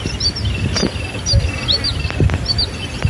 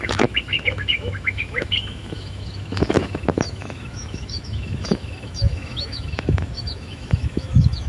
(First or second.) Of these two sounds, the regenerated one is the second